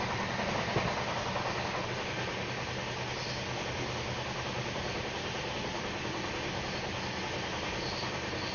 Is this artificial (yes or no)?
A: no